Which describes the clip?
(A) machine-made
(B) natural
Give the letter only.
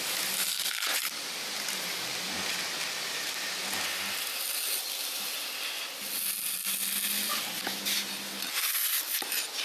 B